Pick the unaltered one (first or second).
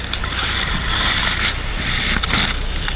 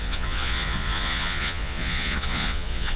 first